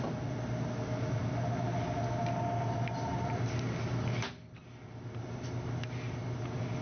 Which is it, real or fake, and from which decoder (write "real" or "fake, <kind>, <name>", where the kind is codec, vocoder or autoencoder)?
real